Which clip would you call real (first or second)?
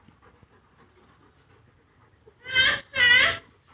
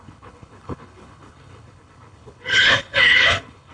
first